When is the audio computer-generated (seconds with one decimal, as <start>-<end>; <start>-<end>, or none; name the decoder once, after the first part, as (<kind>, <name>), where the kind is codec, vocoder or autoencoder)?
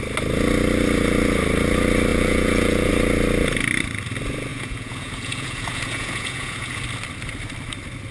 2.1-2.9 (vocoder, Vocos); 4.5-6.8